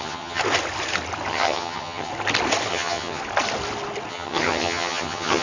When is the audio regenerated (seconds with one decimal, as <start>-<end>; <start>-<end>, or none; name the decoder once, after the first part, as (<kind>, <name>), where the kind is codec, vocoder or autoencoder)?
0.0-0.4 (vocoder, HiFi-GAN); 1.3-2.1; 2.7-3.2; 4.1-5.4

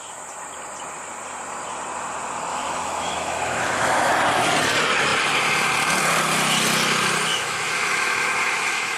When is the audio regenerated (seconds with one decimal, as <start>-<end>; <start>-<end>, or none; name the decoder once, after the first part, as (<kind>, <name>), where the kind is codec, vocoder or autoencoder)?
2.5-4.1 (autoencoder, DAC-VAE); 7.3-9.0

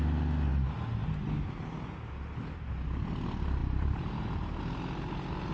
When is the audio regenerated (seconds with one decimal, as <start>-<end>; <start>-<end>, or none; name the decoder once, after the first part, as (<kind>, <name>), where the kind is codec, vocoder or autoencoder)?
3.6-4.6 (vocoder, BigVGAN v2)